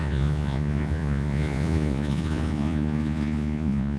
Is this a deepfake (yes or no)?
yes